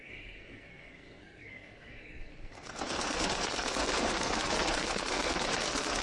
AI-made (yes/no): yes